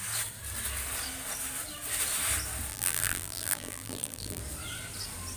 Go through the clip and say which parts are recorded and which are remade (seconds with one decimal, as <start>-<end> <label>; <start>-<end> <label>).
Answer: 0.0-2.7 recorded; 2.7-4.4 remade; 4.4-5.4 recorded